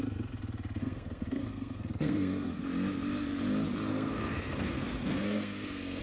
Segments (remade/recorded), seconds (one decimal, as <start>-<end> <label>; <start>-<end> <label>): 0.0-0.8 recorded; 0.8-2.6 remade; 2.6-3.9 recorded; 3.9-6.0 remade